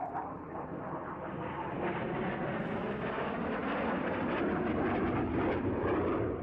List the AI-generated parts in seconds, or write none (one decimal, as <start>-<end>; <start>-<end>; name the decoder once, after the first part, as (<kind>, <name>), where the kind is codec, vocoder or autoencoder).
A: none